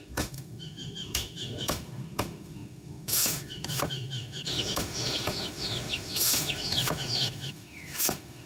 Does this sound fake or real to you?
fake